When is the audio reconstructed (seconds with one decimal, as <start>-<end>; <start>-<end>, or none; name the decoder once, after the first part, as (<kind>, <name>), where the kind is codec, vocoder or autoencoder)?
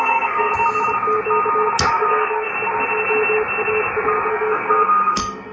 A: 0.0-0.5 (codec, SNAC); 1.9-2.5; 4.3-5.5